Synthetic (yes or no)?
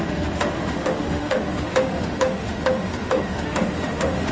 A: yes